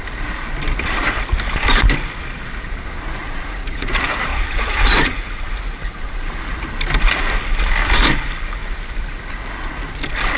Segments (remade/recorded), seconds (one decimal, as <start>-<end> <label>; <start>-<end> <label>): 0.0-3.2 recorded; 3.2-3.9 remade; 3.9-4.3 recorded; 4.3-6.4 remade; 6.4-10.4 recorded